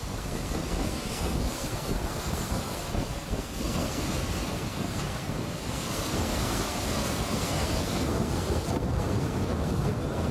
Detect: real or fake fake